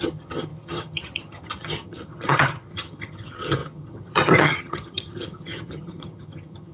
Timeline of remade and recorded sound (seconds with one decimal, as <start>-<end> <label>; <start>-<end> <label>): 0.0-6.7 remade